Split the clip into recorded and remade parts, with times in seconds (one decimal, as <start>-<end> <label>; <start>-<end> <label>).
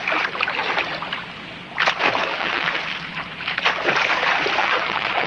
0.0-2.3 recorded; 2.3-2.8 remade; 2.8-4.6 recorded; 4.6-5.3 remade